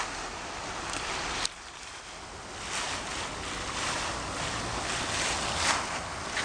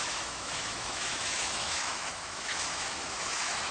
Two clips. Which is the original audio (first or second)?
first